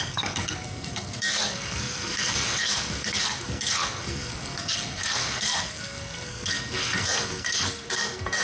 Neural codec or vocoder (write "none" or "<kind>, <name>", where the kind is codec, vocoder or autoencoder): codec, SNAC